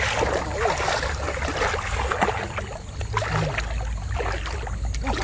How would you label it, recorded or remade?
recorded